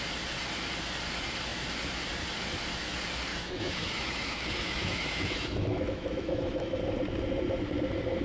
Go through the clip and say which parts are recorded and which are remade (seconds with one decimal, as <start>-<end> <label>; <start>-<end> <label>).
0.0-3.3 recorded; 3.3-6.8 remade; 6.8-8.2 recorded